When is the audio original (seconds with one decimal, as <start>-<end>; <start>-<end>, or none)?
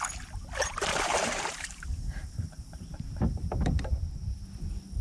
0.0-0.9; 3.9-5.0